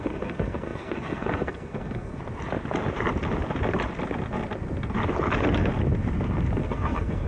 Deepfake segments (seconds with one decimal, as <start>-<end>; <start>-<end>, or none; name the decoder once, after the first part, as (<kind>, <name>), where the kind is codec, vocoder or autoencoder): 0.0-2.2 (codec, SNAC); 6.6-7.3